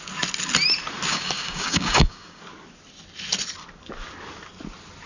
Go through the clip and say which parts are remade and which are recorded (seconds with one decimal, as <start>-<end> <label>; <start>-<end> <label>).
0.0-1.1 recorded; 1.1-2.4 remade; 2.4-5.1 recorded